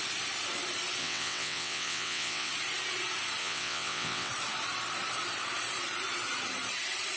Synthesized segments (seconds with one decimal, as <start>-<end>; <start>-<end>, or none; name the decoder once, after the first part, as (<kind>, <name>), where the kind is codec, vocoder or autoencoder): 1.0-2.5 (vocoder, WaveNeXt); 3.4-4.3